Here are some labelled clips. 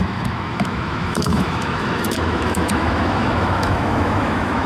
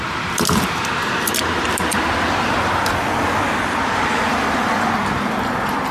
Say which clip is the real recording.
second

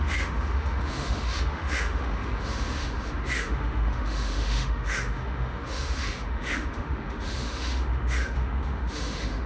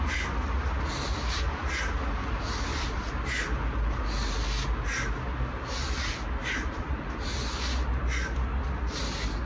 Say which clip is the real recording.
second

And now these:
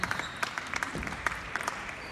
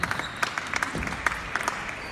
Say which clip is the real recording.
second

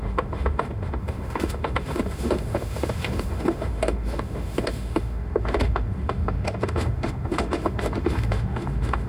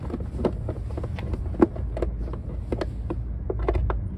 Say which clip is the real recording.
second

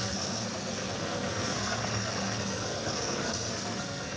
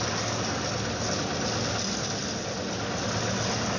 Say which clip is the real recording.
second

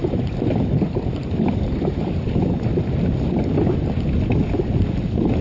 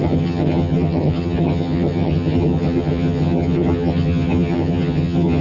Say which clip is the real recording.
first